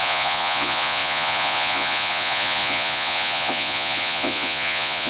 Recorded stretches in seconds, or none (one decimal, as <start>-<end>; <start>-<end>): none